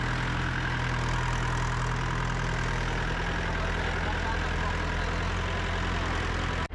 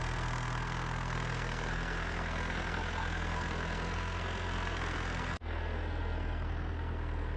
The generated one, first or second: second